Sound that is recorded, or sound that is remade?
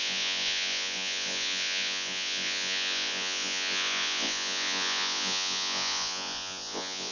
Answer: remade